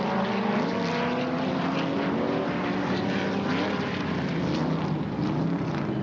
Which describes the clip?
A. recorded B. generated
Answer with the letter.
A